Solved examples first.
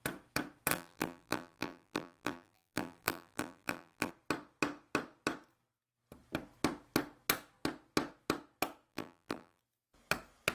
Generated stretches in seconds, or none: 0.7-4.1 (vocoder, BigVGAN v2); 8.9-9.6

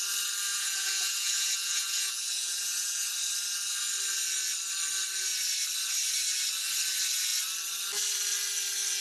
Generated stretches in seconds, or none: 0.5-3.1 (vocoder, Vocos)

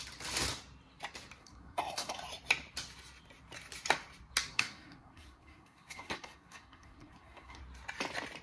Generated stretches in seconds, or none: 1.4-2.2 (codec, SNAC); 4.5-7.6

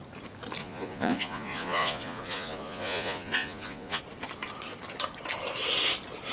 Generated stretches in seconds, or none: 0.6-4.0 (vocoder, Vocos)

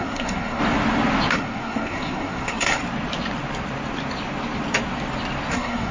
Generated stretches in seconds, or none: 0.0-0.6 (codec, SNAC); 1.3-2.8; 5.5-5.9

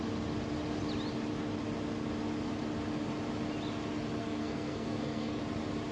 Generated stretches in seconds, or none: 4.2-5.4 (codec, SNAC)

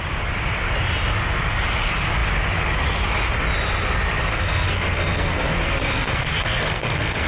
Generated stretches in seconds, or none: 4.3-7.3 (codec, SNAC)

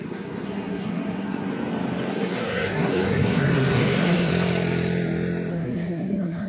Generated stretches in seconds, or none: 0.0-1.5 (codec, SNAC); 2.1-4.3; 5.5-6.5